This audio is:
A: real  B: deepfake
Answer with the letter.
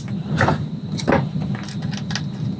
A